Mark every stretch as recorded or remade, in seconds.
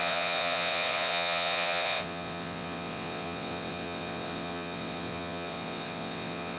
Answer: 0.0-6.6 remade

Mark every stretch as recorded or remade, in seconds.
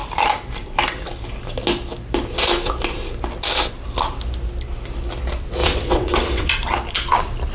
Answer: 0.0-5.6 recorded; 5.6-6.5 remade; 6.5-7.5 recorded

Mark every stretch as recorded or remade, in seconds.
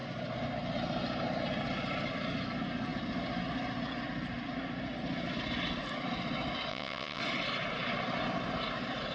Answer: 0.0-6.7 recorded; 6.7-7.2 remade; 7.2-9.1 recorded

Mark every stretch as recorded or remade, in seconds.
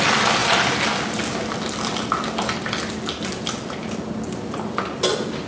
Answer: 0.0-5.5 recorded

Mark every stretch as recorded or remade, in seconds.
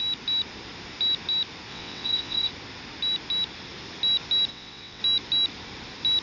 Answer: 0.0-1.7 recorded; 1.7-2.5 remade; 2.5-4.5 recorded; 4.5-5.0 remade; 5.0-6.2 recorded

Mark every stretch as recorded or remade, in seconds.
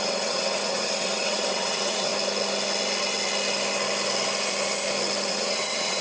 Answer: 0.0-2.1 remade; 2.1-5.3 recorded; 5.3-6.0 remade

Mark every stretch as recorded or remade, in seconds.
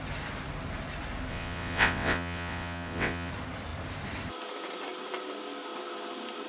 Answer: 0.0-1.3 recorded; 1.3-3.3 remade; 3.3-6.5 recorded